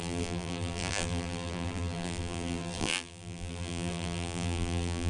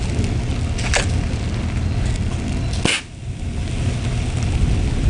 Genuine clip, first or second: second